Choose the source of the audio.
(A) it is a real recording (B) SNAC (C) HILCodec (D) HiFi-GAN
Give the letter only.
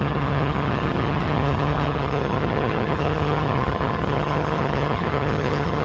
D